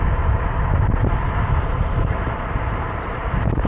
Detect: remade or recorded remade